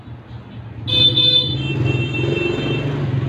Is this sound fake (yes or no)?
no